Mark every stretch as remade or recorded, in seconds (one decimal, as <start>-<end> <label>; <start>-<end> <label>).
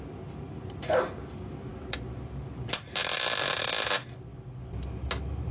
0.0-5.5 recorded